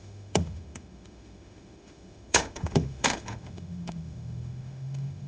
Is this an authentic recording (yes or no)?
no